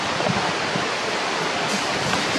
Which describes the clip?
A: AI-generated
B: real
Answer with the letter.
B